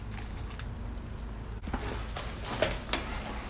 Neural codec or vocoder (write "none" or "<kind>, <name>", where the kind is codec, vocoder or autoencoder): none